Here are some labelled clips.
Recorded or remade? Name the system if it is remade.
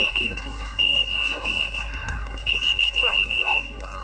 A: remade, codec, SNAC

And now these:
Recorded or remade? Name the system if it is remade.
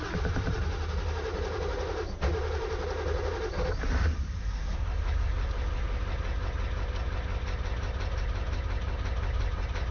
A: recorded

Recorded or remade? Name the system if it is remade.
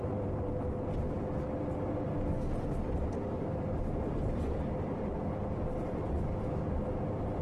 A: recorded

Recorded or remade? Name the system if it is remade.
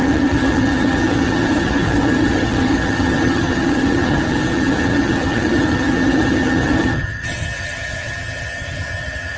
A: remade, vocoder, HiFi-GAN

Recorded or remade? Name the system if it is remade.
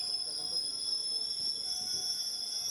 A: recorded